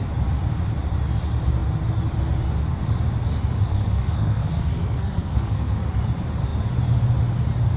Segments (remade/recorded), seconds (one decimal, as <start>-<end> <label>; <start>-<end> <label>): 0.0-3.7 recorded; 3.7-5.9 remade; 5.9-7.8 recorded